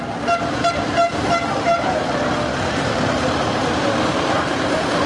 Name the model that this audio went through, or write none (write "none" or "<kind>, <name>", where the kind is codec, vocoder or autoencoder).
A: vocoder, BigVGAN v2